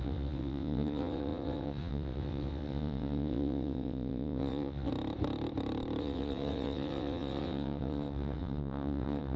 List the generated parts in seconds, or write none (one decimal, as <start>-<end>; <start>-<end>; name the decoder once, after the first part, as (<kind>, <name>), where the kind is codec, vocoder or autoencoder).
0.0-4.9 (vocoder, WaveNeXt); 6.0-9.4